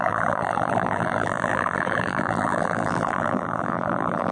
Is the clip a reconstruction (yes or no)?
yes